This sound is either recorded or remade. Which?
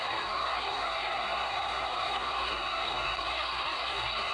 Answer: remade